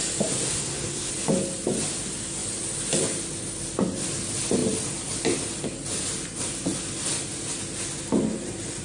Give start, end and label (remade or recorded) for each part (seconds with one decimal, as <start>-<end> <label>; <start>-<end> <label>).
0.0-0.5 recorded; 0.5-1.1 remade; 1.1-8.8 recorded